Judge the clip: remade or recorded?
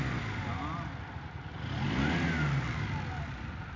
recorded